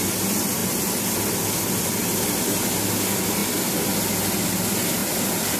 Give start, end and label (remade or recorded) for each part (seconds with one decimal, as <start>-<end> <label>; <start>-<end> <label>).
0.0-5.0 recorded; 5.0-5.6 remade